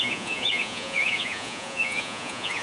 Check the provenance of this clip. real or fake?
fake